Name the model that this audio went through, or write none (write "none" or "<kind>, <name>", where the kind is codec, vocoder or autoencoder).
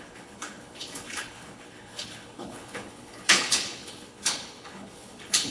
codec, HILCodec